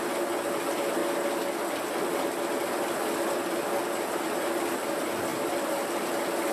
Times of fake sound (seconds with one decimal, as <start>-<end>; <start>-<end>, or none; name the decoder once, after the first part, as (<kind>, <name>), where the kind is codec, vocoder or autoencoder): none